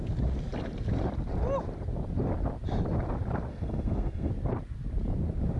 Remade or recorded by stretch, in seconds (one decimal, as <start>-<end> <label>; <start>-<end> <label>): 0.0-3.5 recorded; 3.5-4.3 remade; 4.3-5.6 recorded